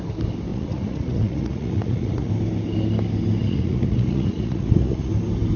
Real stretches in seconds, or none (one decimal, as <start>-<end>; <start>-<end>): 0.0-0.5; 2.3-3.4; 5.1-5.6